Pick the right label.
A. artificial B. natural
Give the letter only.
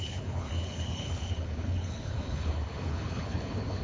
A